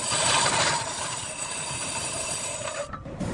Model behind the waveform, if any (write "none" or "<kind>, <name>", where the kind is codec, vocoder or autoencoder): vocoder, BigVGAN v2